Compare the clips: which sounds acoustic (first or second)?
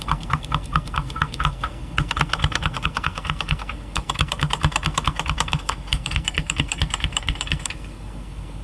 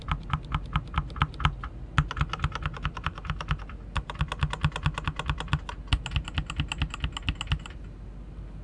second